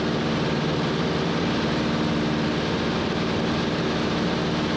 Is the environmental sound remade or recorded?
recorded